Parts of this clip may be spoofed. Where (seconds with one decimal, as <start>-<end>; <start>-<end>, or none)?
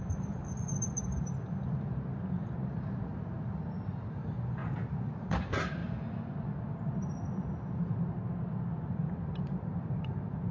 0.0-0.4; 4.0-4.6; 5.2-5.8; 8.8-10.5